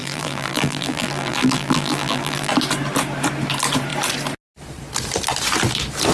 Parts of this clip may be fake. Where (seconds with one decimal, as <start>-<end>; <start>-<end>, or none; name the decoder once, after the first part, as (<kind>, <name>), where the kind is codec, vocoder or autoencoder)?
0.0-2.5 (vocoder, BigVGAN v2)